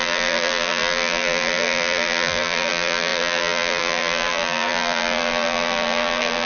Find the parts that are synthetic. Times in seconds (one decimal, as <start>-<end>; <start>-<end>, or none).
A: 0.0-6.5